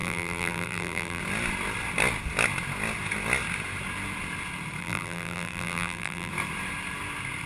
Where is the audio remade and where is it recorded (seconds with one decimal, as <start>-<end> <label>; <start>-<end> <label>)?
0.0-1.2 remade; 1.2-4.8 recorded; 4.8-6.3 remade; 6.3-7.5 recorded